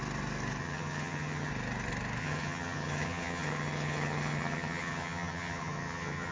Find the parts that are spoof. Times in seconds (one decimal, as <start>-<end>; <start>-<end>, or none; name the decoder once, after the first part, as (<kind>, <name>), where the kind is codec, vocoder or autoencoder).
0.6-1.5 (vocoder, HiFi-GAN); 2.2-6.3